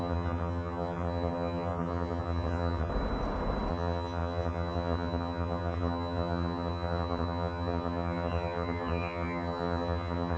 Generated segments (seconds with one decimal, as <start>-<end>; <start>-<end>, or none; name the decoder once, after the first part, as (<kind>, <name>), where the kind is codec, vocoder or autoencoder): 0.0-2.9 (vocoder, HiFi-GAN); 3.7-10.4